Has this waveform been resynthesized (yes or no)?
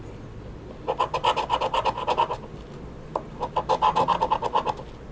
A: no